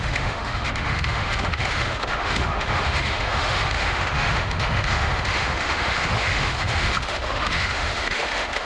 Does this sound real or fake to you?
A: fake